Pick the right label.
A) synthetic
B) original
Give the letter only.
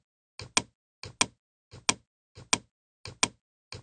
B